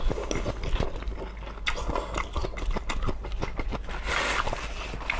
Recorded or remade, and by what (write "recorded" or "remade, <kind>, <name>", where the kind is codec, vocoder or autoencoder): recorded